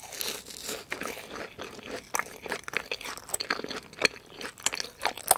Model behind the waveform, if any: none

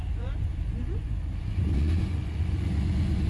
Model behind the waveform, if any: vocoder, Vocos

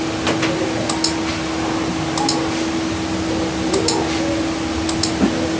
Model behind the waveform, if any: none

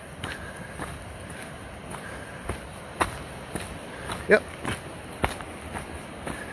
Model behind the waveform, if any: none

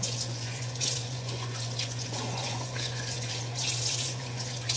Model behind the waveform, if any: vocoder, Vocos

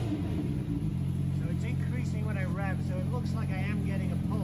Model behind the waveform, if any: none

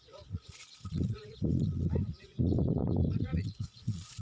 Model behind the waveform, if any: vocoder, Vocos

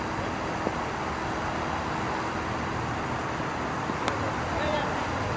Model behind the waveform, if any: none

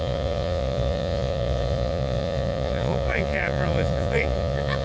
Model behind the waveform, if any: vocoder, Vocos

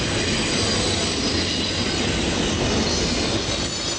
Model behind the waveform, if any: none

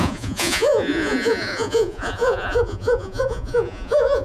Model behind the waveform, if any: vocoder, Vocos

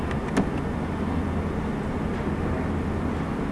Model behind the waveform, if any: none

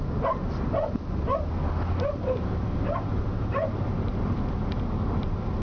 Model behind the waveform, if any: none